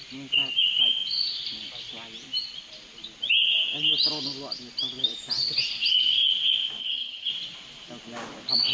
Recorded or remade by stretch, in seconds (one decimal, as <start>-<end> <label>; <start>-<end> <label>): 0.0-6.8 recorded; 6.8-7.3 remade; 7.3-8.7 recorded